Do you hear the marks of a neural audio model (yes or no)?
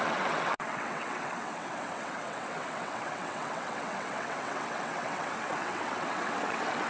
yes